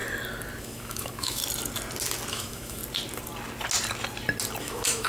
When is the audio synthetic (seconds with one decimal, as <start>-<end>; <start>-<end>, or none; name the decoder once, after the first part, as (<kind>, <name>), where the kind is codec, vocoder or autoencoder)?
0.6-1.4 (autoencoder, DAC-VAE); 2.3-2.8; 4.6-5.1